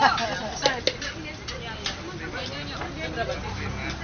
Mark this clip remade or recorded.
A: recorded